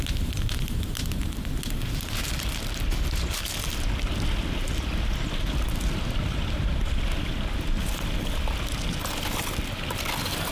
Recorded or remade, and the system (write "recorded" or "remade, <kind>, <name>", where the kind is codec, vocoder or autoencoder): recorded